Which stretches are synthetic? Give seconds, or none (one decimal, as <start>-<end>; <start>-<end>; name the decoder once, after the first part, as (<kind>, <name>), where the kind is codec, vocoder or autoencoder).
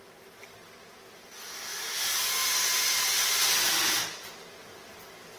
none